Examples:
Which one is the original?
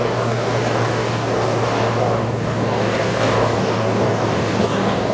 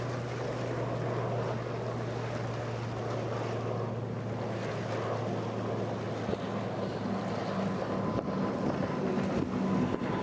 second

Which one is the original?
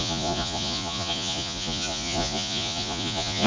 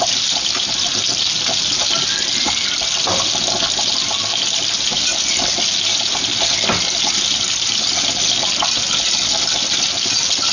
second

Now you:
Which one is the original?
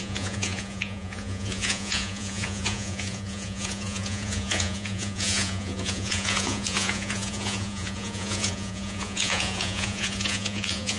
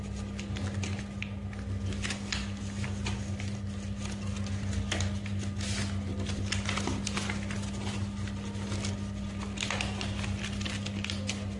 second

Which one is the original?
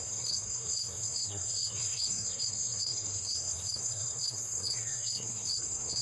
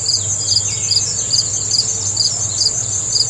second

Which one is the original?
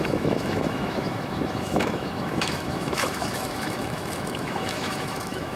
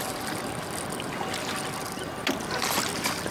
second